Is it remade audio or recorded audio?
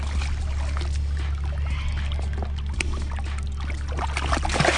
recorded